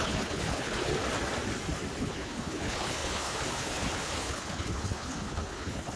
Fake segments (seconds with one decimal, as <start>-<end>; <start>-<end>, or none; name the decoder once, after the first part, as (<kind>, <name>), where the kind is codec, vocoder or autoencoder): 0.0-0.9 (codec, HILCodec); 2.0-6.0